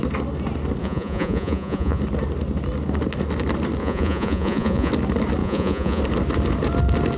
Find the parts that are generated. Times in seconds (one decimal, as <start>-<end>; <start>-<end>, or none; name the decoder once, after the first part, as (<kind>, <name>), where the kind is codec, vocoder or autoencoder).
0.8-2.0 (vocoder, Vocos); 3.8-4.9; 5.4-6.0